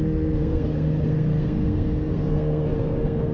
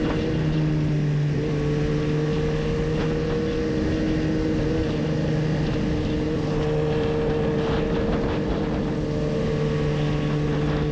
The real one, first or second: second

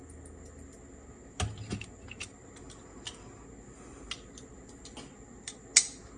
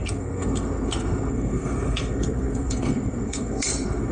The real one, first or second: first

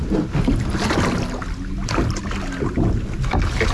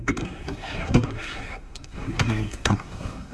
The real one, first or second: first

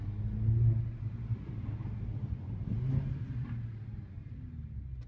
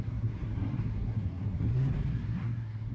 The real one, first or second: first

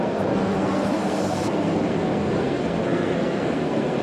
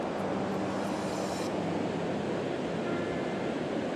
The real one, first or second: second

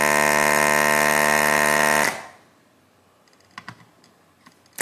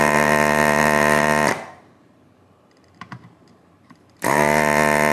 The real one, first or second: first